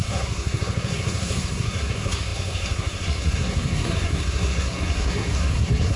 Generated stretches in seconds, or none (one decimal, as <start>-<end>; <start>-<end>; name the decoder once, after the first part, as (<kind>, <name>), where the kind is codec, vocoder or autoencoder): 0.0-6.0 (codec, SNAC)